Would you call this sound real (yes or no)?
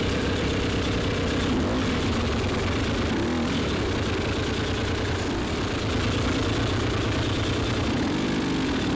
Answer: yes